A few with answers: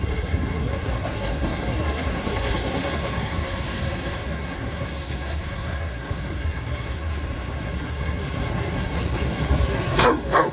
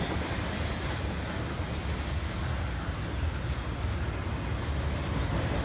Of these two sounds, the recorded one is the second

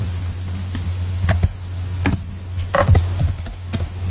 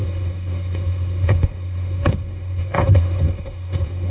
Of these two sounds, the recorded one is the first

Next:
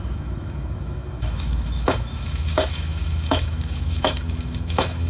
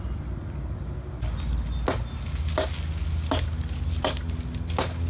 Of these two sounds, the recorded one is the second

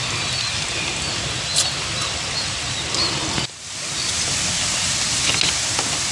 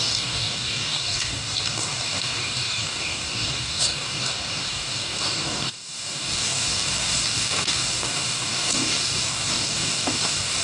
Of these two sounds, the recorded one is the first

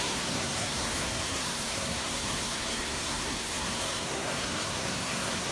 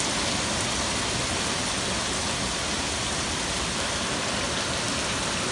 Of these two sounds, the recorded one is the second